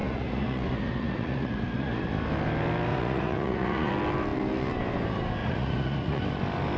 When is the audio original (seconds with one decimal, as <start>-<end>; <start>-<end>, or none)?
2.1-2.9; 3.9-5.4; 6.2-6.8